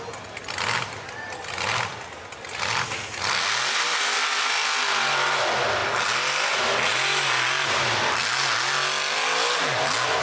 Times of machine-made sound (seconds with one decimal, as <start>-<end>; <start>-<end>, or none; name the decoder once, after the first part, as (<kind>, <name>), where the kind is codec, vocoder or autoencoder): none